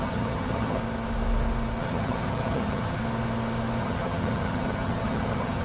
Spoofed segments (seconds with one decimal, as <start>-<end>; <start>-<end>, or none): 0.0-0.8; 1.8-3.0; 3.8-5.6